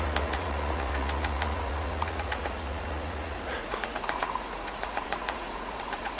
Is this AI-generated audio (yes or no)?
yes